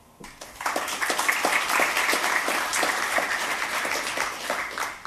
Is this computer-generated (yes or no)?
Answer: no